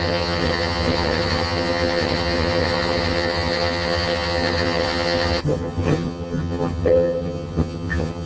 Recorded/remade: remade